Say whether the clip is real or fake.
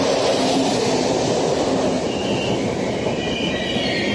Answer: real